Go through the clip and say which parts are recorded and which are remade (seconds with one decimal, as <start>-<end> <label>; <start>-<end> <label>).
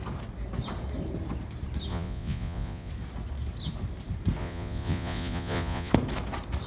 0.0-1.9 recorded; 1.9-2.9 remade; 2.9-4.4 recorded; 4.4-5.9 remade; 5.9-6.7 recorded